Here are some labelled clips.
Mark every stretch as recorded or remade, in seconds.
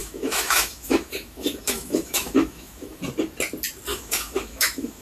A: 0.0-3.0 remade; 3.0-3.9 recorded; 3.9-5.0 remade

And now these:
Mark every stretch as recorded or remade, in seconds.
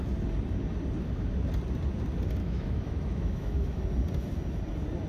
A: 0.0-2.4 recorded; 2.4-3.8 remade; 3.8-5.1 recorded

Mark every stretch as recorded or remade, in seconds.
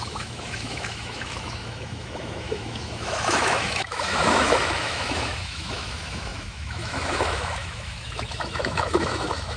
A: 0.0-9.6 remade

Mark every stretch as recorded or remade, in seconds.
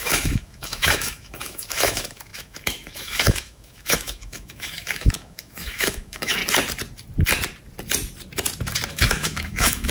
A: 0.0-6.4 remade; 6.4-8.9 recorded; 8.9-9.9 remade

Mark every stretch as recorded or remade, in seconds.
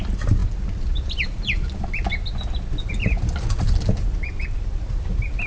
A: 0.0-5.5 recorded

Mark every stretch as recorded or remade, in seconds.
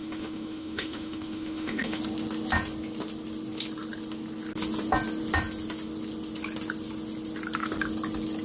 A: 0.0-2.0 remade; 2.0-8.4 recorded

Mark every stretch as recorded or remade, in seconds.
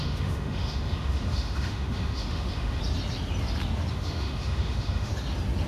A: 0.0-2.8 remade; 2.8-3.9 recorded; 3.9-5.1 remade; 5.1-5.7 recorded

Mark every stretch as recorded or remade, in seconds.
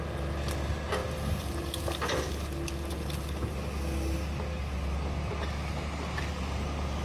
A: 0.0-7.0 recorded